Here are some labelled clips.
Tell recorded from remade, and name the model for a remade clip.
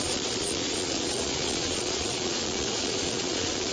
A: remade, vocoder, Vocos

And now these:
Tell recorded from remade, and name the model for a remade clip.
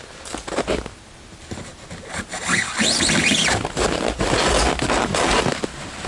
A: recorded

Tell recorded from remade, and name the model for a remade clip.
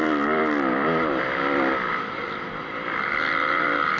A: remade, vocoder, BigVGAN v2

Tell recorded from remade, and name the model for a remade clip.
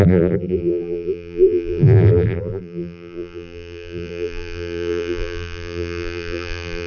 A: remade, vocoder, BigVGAN v2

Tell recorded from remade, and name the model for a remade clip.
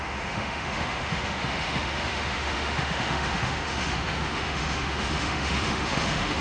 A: remade, autoencoder, DAC-VAE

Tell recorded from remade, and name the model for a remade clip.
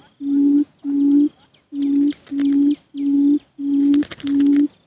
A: recorded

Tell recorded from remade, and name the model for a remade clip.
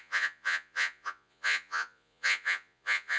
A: remade, vocoder, Vocos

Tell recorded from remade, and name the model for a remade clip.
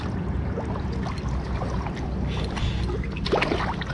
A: recorded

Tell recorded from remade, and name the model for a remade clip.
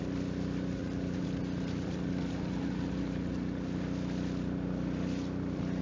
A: recorded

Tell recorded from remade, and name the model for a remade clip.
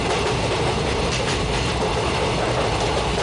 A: recorded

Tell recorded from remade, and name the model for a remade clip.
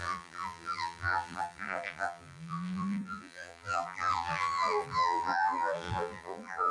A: remade, vocoder, BigVGAN v2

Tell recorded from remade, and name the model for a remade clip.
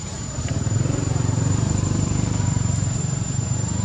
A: remade, vocoder, BigVGAN v2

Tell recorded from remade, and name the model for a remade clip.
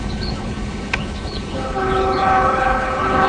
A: remade, codec, HILCodec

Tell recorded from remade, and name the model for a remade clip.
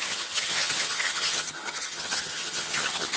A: remade, vocoder, HiFi-GAN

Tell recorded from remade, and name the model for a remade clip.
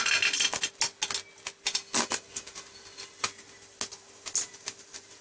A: recorded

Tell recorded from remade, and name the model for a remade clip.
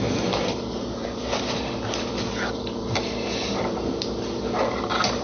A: remade, vocoder, BigVGAN v2